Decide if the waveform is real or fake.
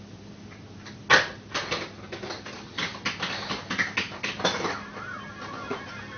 real